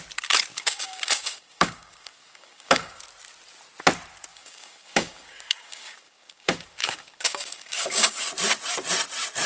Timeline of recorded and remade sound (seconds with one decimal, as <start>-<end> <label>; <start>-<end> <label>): 0.0-0.5 recorded; 0.5-3.0 remade; 3.0-4.3 recorded; 4.3-8.3 remade; 8.3-9.5 recorded